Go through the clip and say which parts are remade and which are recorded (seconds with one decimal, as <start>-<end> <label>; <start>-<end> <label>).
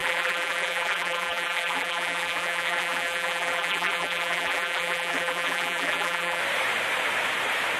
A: 0.0-6.4 remade; 6.4-7.8 recorded